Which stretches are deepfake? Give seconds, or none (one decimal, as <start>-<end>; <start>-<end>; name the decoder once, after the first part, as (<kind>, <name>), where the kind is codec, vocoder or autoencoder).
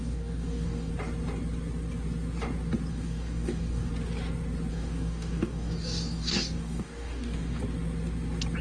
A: 0.0-0.9 (codec, DAC); 2.9-3.9; 4.7-7.6